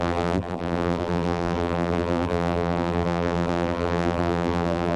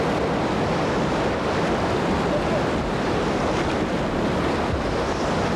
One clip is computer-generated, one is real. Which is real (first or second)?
second